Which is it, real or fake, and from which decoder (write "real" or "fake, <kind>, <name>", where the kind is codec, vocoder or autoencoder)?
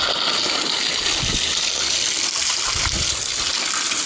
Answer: real